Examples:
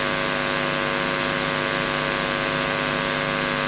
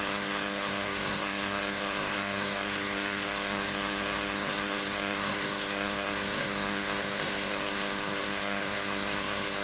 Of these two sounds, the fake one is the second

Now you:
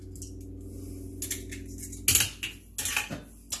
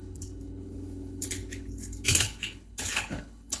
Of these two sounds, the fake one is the second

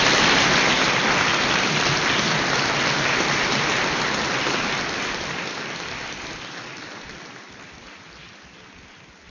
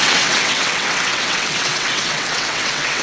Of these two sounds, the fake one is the second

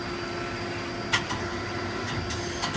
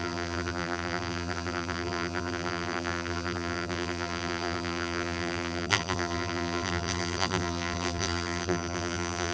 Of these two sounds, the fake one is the second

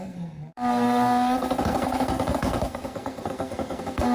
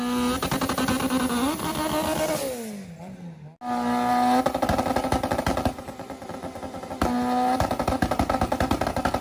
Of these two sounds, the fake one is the first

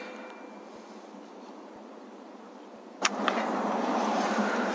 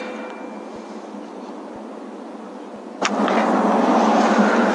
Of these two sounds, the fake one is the first